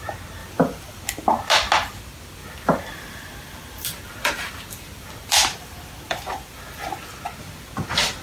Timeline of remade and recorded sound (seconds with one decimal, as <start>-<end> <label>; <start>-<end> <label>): 0.0-0.4 recorded; 0.4-1.0 remade; 1.0-2.4 recorded; 2.4-6.8 remade; 6.8-8.2 recorded

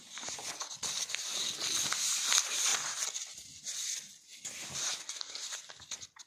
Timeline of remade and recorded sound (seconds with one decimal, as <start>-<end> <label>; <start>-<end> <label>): 0.0-6.3 recorded